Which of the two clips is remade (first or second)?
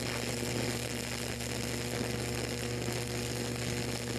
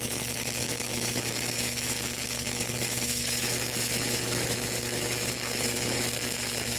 second